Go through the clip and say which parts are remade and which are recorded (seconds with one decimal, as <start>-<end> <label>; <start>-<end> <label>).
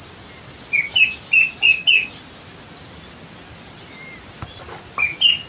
0.0-5.5 recorded